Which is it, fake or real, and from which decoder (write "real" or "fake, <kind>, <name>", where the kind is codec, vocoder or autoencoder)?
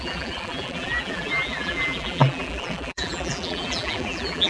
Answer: fake, vocoder, BigVGAN v2